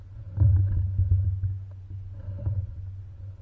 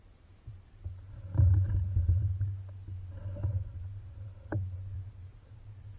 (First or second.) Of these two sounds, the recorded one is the first